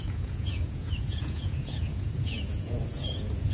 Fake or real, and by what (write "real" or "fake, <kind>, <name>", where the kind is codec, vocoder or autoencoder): fake, vocoder, Vocos